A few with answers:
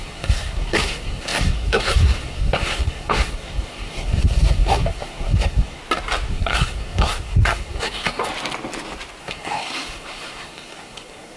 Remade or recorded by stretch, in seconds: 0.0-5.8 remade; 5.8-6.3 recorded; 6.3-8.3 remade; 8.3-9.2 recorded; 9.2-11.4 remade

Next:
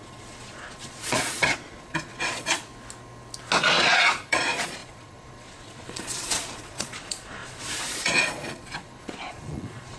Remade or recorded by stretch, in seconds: 0.0-2.7 remade; 2.7-3.6 recorded; 3.6-10.0 remade

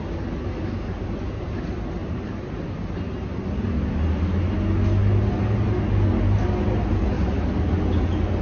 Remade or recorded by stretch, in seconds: 0.0-2.0 recorded; 2.0-2.8 remade; 2.8-8.4 recorded

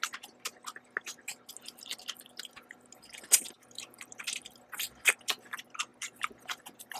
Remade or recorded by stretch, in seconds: 0.0-7.0 recorded

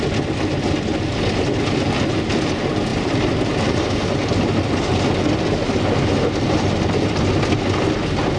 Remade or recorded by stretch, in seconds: 0.0-2.9 recorded; 2.9-5.1 remade; 5.1-8.4 recorded

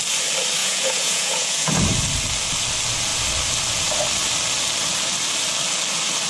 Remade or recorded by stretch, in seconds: 0.0-0.6 recorded; 0.6-1.7 remade; 1.7-6.3 recorded